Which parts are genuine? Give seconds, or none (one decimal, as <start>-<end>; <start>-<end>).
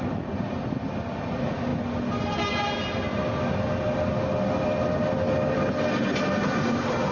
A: 0.0-7.1